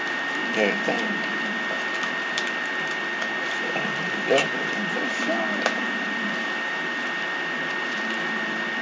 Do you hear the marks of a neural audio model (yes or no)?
no